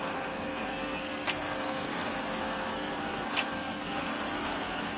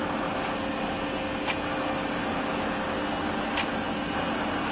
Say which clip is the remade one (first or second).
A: first